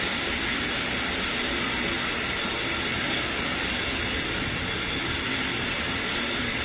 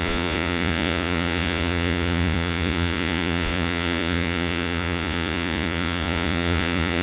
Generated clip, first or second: second